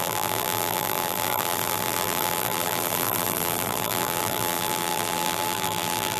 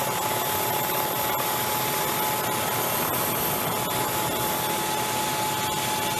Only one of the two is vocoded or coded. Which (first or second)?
first